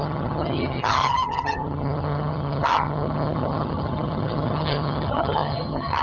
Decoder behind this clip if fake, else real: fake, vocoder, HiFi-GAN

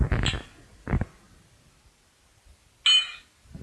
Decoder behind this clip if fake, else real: real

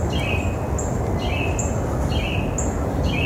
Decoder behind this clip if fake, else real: real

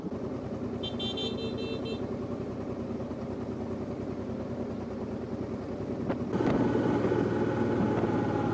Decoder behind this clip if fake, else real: real